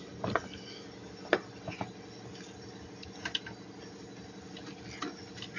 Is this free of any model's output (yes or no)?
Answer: yes